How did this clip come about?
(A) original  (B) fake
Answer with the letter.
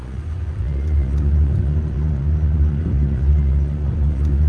B